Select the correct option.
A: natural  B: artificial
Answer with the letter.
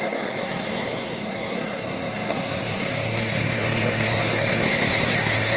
B